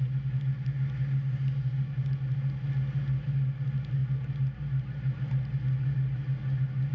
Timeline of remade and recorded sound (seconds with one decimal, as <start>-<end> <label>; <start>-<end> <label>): 0.0-6.9 recorded